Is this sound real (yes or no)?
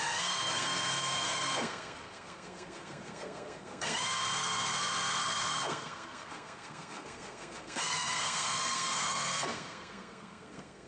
no